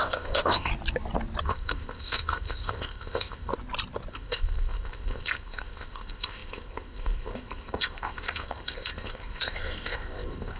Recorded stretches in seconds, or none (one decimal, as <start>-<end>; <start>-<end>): 0.7-1.4; 3.5-4.1